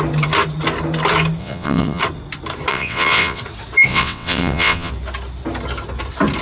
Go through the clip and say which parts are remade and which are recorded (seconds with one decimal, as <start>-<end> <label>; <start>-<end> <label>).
0.0-1.4 recorded; 1.4-2.0 remade; 2.0-2.7 recorded; 2.7-3.4 remade; 3.4-3.9 recorded; 3.9-4.9 remade; 4.9-6.4 recorded